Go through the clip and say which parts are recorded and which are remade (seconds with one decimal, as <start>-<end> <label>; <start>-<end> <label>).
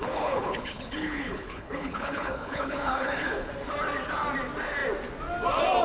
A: 0.0-3.5 remade; 3.5-5.8 recorded